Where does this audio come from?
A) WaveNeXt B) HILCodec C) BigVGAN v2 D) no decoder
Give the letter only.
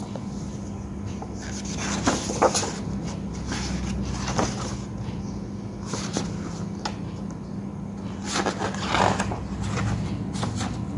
D